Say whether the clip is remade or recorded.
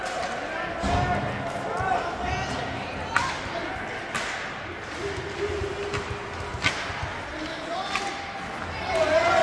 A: recorded